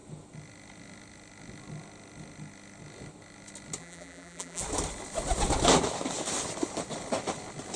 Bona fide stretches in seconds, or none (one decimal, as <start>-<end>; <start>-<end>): 0.0-3.8; 4.6-7.8